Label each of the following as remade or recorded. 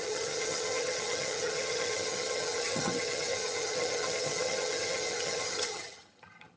remade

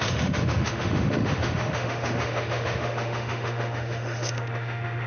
remade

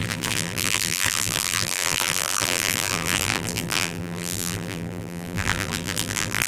remade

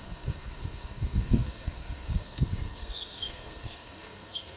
remade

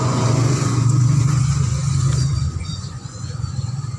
remade